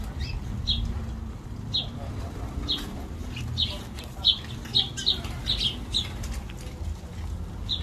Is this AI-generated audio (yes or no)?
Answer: no